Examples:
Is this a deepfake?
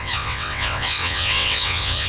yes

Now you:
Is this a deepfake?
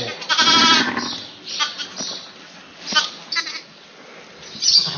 no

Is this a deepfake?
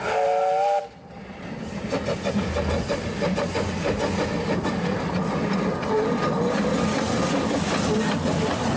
no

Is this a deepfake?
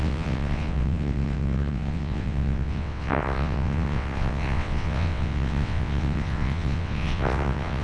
yes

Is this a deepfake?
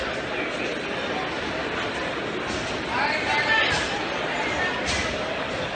no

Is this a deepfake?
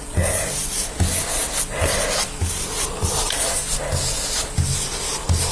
no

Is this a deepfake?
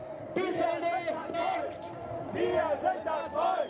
no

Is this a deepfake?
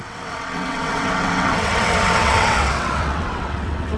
yes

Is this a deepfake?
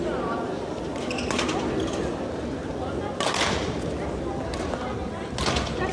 no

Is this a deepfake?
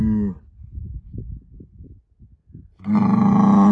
no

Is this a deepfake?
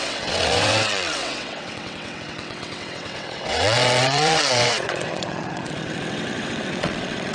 yes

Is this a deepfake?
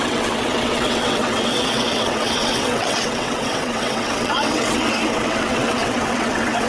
yes